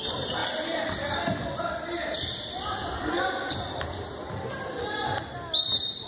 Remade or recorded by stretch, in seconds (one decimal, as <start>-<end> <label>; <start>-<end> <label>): 0.0-6.1 recorded